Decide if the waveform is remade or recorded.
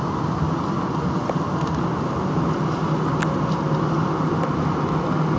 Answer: recorded